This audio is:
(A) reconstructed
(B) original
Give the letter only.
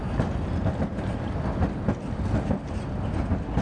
B